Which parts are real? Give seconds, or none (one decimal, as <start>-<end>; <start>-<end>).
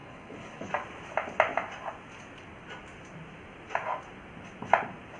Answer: 0.7-5.2